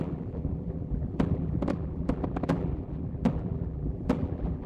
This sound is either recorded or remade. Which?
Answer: remade